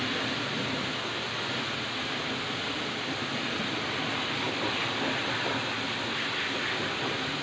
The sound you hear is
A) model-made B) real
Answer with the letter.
B